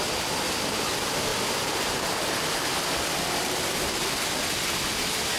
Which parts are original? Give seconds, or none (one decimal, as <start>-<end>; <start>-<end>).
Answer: none